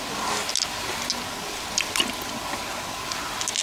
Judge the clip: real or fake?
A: real